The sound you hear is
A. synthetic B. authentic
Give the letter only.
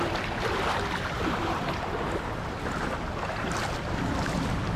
B